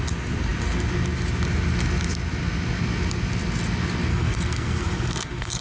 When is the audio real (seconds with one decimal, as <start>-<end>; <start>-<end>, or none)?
0.0-4.1